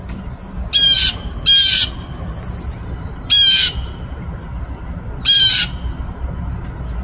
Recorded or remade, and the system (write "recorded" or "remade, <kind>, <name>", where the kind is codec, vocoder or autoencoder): recorded